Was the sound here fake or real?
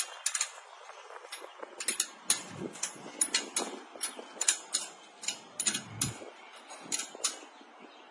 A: real